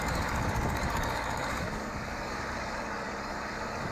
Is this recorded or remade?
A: remade